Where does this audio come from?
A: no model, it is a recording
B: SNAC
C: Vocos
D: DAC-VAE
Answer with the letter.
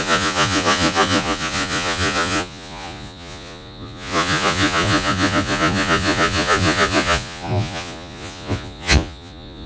C